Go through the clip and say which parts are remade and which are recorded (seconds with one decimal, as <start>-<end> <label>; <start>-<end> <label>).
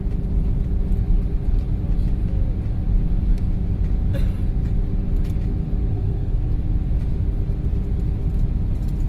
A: 0.0-5.9 recorded; 5.9-6.5 remade; 6.5-9.1 recorded